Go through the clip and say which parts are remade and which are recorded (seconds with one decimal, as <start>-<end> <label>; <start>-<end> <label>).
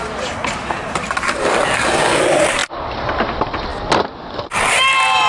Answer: 0.0-3.7 remade; 3.7-4.2 recorded; 4.2-5.3 remade